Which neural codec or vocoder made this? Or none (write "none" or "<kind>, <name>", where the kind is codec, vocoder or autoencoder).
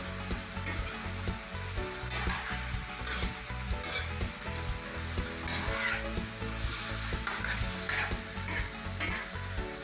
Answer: none